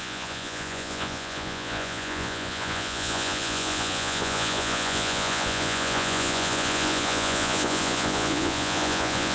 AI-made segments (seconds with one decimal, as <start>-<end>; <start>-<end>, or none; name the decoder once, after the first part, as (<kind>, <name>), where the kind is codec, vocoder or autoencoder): 0.0-9.3 (vocoder, Vocos)